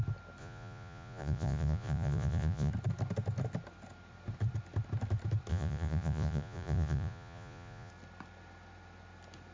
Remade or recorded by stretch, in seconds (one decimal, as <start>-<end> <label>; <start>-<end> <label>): 0.0-0.4 recorded; 0.4-2.7 remade; 2.7-5.5 recorded; 5.5-7.9 remade; 7.9-9.5 recorded